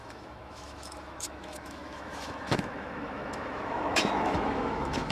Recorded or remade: remade